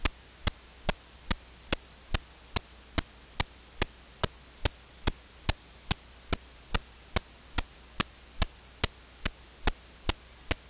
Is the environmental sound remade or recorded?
recorded